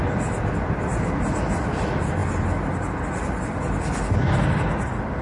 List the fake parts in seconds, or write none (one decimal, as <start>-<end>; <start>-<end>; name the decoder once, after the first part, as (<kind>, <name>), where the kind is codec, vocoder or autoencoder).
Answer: none